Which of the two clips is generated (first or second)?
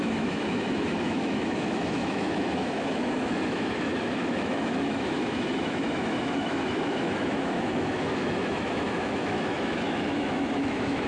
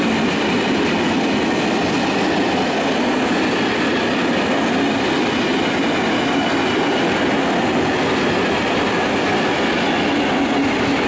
first